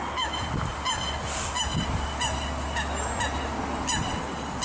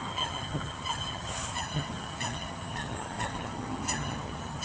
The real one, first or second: first